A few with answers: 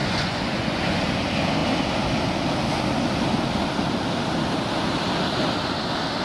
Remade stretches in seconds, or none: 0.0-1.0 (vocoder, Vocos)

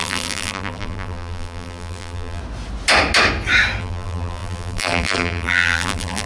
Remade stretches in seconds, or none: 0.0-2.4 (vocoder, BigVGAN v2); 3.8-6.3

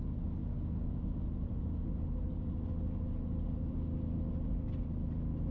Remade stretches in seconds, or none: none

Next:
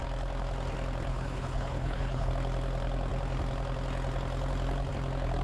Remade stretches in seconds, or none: 1.1-2.3 (codec, HILCodec)

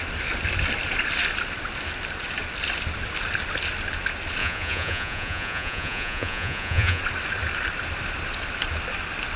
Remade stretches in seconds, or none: 4.4-7.0 (vocoder, Vocos)

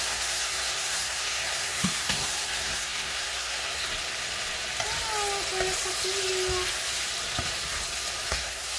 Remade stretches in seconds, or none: 0.0-3.9 (codec, SNAC); 8.3-8.8

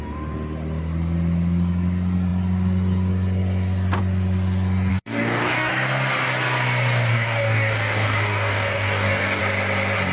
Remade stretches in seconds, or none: 4.9-5.7 (codec, DAC); 7.1-9.4

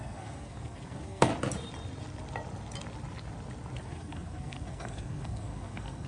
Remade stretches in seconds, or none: 0.0-1.3 (codec, SNAC); 3.8-6.1